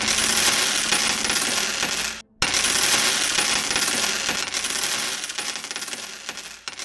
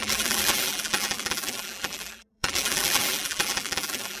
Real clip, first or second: first